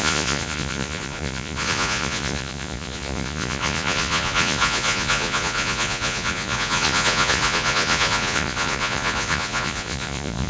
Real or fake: fake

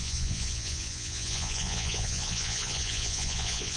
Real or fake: fake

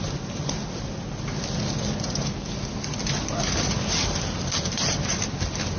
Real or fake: real